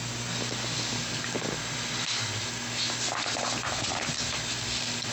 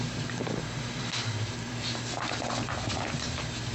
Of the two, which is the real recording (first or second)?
first